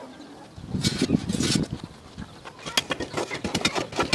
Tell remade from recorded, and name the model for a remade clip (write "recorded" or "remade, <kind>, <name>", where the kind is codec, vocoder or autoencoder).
recorded